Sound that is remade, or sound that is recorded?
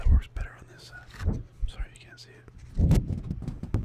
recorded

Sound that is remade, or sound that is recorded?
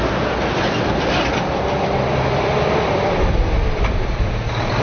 remade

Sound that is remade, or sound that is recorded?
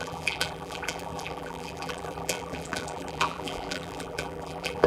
remade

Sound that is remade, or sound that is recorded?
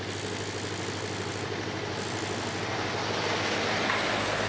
recorded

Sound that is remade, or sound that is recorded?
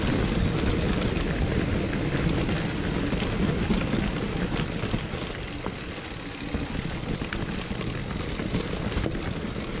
recorded